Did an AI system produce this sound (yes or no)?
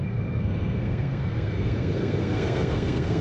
yes